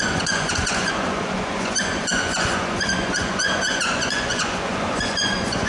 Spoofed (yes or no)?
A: yes